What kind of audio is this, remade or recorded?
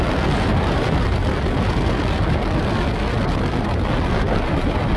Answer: recorded